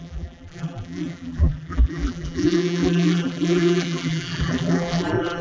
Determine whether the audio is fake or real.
fake